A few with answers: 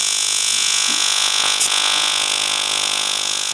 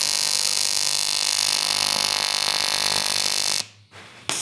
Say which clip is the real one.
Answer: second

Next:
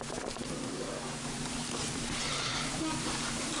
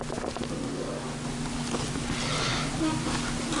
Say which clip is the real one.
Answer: second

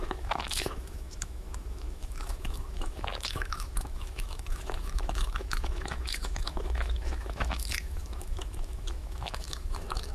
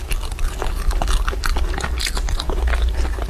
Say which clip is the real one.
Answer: second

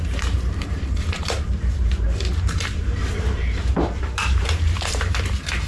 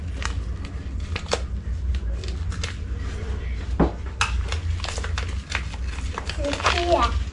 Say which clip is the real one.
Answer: second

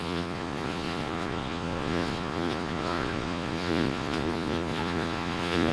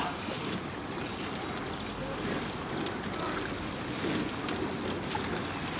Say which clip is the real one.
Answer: second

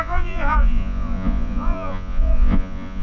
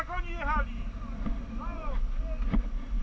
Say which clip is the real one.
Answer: second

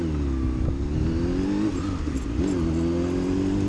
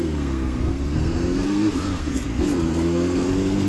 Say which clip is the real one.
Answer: first